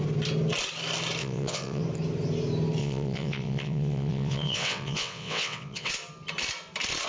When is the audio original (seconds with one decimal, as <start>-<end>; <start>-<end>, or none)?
0.0-1.2; 1.8-2.8; 5.9-7.1